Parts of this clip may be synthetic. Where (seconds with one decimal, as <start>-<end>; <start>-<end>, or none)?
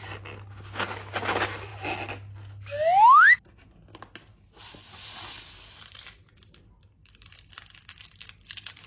none